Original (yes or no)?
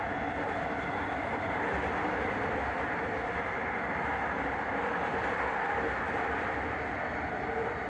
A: yes